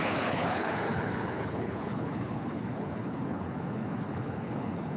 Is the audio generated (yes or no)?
yes